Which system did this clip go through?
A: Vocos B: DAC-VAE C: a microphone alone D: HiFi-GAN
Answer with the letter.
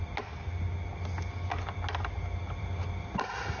C